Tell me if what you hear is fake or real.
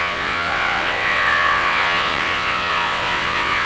fake